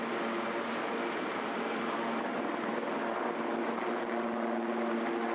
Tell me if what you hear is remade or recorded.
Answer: recorded